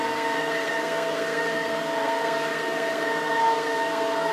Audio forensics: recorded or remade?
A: remade